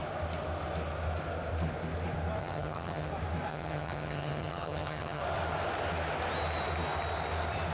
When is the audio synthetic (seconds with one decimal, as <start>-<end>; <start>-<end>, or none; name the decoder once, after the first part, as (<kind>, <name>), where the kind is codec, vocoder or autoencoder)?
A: 2.4-3.1 (vocoder, HiFi-GAN); 3.5-5.2